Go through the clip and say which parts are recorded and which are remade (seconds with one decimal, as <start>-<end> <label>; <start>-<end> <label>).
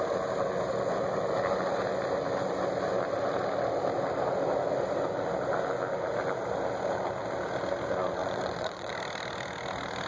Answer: 0.0-8.2 recorded; 8.2-8.9 remade; 8.9-10.1 recorded